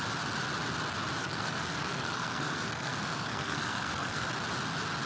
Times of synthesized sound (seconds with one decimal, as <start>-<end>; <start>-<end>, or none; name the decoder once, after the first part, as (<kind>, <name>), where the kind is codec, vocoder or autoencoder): 1.2-4.3 (codec, SNAC)